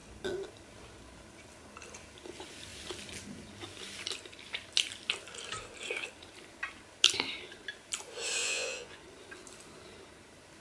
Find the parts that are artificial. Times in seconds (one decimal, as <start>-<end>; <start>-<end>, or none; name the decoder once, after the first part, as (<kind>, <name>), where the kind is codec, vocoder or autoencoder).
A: 8.4-9.0 (vocoder, Vocos)